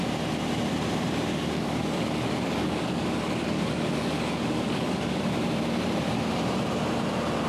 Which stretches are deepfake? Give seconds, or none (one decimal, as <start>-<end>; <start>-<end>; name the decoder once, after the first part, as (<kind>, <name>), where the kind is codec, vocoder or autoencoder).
1.3-5.2 (codec, DAC)